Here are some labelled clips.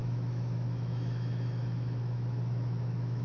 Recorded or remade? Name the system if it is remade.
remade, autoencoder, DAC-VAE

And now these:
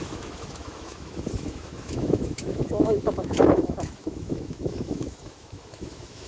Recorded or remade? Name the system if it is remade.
remade, autoencoder, DAC-VAE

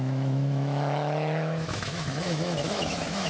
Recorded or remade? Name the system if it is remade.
remade, autoencoder, DAC-VAE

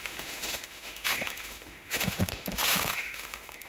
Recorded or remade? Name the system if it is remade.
remade, autoencoder, DAC-VAE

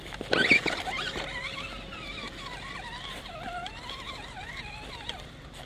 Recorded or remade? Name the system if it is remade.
recorded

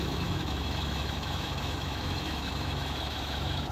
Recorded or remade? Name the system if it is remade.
remade, autoencoder, DAC-VAE